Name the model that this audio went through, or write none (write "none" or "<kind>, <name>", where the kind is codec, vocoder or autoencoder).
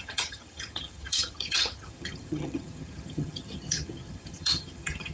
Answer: vocoder, HiFi-GAN